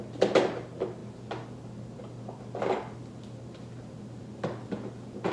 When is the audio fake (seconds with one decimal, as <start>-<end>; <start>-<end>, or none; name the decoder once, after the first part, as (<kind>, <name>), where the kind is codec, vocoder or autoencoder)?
none